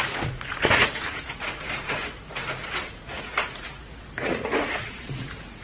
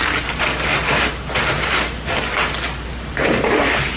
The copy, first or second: first